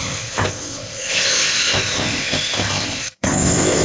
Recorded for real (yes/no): no